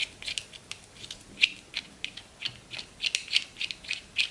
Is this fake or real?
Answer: real